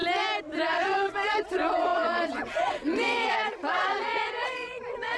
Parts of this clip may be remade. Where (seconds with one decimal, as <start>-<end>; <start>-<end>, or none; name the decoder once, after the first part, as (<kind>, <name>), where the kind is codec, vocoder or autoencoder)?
0.7-5.2 (vocoder, WaveNeXt)